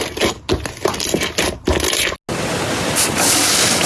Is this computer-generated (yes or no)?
no